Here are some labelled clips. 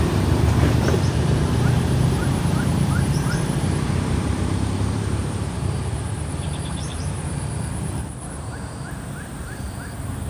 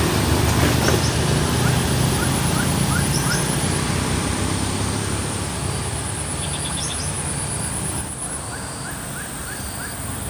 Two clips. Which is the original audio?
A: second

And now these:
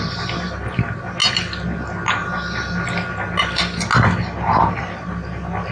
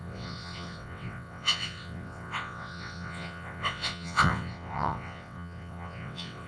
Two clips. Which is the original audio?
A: first